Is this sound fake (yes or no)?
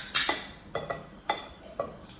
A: no